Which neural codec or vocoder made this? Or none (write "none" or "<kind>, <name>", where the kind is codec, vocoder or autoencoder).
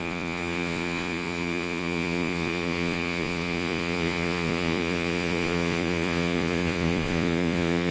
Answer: vocoder, Vocos